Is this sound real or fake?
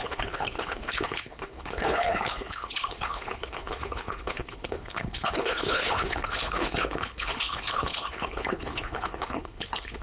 fake